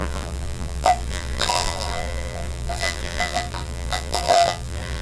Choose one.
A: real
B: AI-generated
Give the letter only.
B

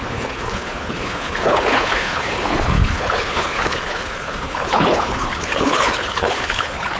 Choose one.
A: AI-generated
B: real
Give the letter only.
A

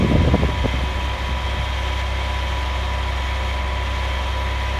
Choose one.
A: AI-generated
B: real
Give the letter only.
B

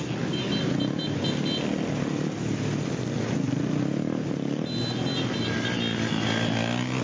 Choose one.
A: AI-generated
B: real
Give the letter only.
B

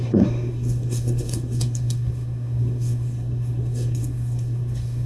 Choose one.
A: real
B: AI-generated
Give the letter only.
B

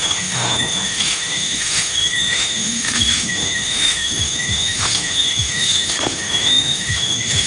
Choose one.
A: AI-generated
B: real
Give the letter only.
A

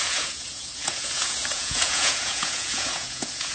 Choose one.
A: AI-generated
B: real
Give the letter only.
A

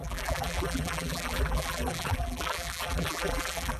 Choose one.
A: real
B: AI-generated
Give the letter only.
B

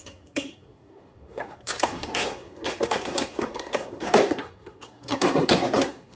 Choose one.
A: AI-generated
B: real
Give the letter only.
A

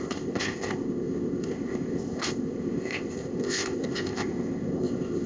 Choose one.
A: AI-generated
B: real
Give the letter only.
A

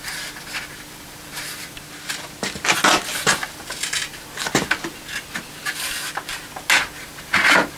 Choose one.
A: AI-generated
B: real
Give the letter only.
B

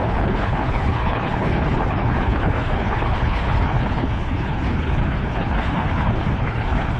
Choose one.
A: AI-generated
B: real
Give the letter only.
A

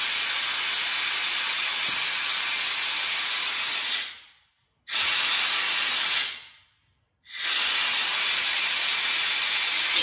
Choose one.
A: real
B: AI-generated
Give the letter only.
A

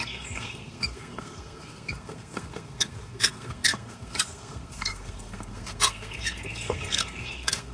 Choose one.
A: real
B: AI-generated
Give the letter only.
B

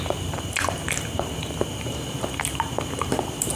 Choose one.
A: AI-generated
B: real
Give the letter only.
A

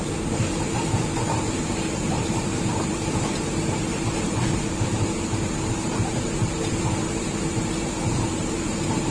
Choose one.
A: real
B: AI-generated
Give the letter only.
B